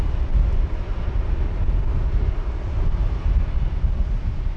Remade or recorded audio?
recorded